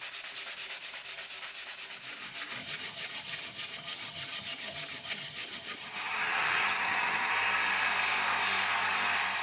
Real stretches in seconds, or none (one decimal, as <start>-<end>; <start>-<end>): 0.0-2.6; 7.3-9.4

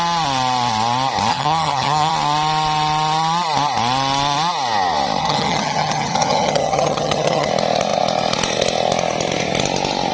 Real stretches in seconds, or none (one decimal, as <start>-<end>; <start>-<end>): 0.0-1.3; 2.1-5.2; 7.5-10.1

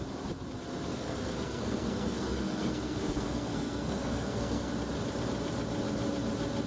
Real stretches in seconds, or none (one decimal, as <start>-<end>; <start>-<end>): 0.0-0.9; 4.7-6.7

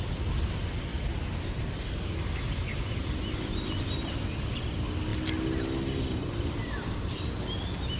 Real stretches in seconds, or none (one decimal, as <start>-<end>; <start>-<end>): 0.0-8.0